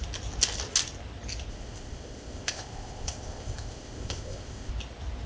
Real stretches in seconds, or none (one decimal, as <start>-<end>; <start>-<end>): 0.0-1.5; 4.7-5.3